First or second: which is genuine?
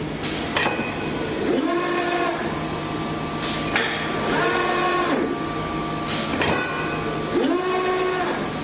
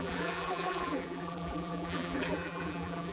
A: first